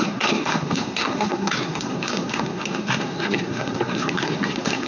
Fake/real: fake